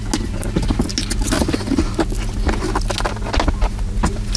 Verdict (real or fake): real